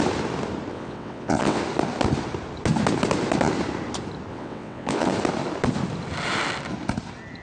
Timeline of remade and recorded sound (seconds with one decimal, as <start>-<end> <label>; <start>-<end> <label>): 0.0-0.7 recorded; 0.7-1.6 remade; 1.6-4.3 recorded; 4.3-5.1 remade; 5.1-7.4 recorded